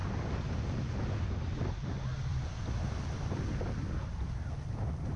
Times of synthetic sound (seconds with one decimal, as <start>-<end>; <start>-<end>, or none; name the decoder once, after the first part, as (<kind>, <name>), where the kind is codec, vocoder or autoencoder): none